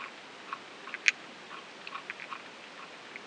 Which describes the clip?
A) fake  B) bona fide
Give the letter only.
B